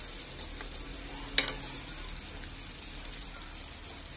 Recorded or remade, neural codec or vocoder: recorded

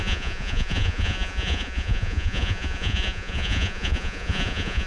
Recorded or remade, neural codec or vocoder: remade, vocoder, Vocos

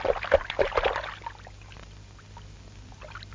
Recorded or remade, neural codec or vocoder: recorded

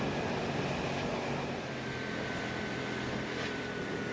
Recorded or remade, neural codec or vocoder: recorded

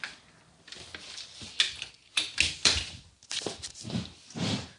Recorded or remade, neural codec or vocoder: recorded